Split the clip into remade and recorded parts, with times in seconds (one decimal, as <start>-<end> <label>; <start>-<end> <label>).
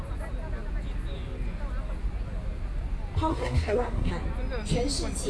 0.0-3.3 recorded; 3.3-4.1 remade; 4.1-5.3 recorded